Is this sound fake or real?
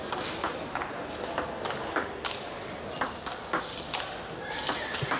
real